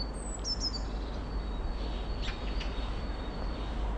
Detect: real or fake real